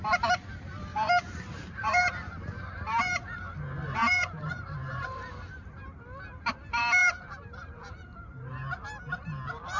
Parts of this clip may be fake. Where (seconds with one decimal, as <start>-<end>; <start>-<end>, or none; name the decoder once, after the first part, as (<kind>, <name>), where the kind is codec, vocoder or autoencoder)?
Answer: 0.9-3.4 (vocoder, BigVGAN v2); 4.0-5.2; 7.0-8.5